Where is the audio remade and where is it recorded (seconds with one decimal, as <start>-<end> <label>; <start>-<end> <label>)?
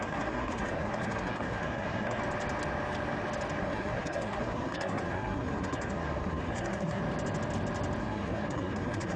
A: 0.0-2.2 remade; 2.2-3.6 recorded; 3.6-7.0 remade; 7.0-8.0 recorded; 8.0-9.2 remade